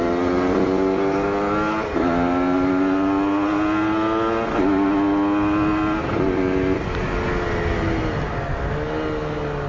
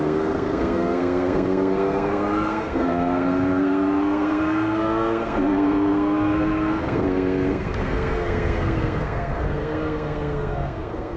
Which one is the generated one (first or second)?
second